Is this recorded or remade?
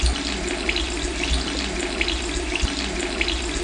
recorded